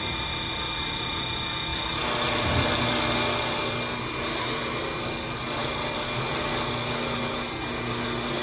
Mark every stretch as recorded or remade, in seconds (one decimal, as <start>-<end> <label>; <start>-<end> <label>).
0.0-8.4 recorded